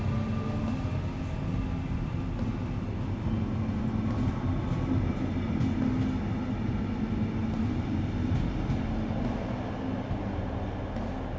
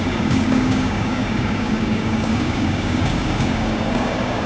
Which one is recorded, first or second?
first